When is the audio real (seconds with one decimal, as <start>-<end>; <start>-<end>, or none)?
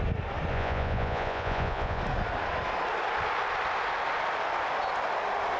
0.0-0.5; 2.0-5.6